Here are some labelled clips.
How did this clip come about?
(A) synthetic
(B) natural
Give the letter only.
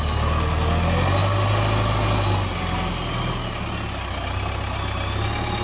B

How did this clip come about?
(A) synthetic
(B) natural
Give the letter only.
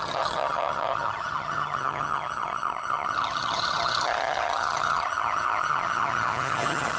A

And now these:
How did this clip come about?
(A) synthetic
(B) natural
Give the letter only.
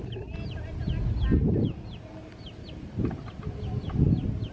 B